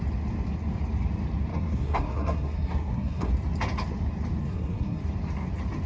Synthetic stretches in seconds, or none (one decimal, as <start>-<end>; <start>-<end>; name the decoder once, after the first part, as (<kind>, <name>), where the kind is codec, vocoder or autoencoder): 1.5-3.3 (codec, SNAC); 4.4-5.0